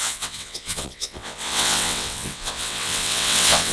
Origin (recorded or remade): remade